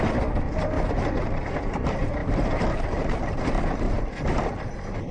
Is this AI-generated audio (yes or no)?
yes